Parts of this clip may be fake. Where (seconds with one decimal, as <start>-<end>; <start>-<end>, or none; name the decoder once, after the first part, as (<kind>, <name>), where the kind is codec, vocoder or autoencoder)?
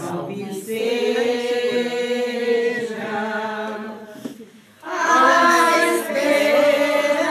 4.5-6.1 (autoencoder, DAC-VAE)